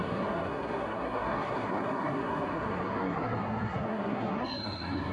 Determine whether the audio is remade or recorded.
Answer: remade